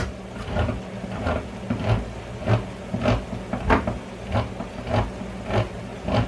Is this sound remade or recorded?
recorded